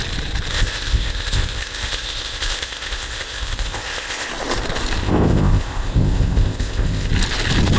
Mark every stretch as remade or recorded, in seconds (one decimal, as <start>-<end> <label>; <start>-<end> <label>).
0.0-0.5 recorded; 0.5-4.3 remade; 4.3-5.0 recorded; 5.0-7.1 remade; 7.1-7.8 recorded